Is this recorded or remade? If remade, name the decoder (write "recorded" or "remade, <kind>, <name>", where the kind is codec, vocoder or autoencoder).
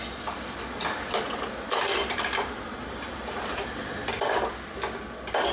recorded